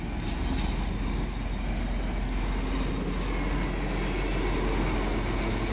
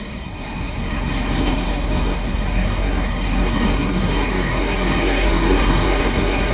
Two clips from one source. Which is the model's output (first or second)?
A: second